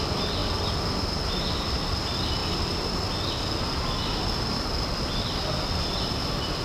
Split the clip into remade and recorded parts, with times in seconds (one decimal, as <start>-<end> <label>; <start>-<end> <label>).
0.0-6.6 recorded